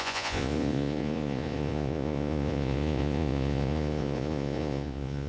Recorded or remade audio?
remade